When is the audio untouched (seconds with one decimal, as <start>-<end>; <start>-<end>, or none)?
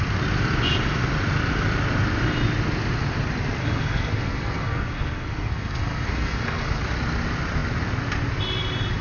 0.0-3.6; 6.8-9.0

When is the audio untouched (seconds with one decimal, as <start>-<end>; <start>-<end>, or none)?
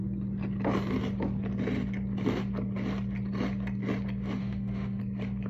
0.0-4.4; 5.0-5.5